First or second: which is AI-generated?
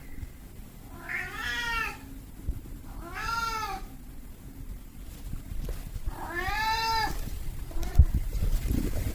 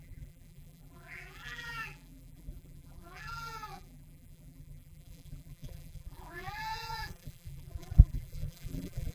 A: second